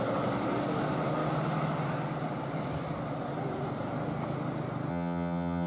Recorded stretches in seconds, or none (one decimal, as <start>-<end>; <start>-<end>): 0.0-4.9